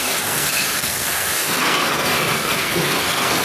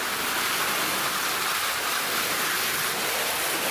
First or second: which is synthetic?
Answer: first